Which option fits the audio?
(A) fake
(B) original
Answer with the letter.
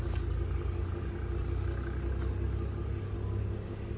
B